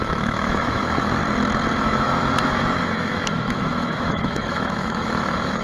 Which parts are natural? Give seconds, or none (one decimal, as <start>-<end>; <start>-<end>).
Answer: 1.2-1.8